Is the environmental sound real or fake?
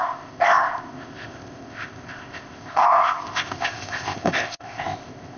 fake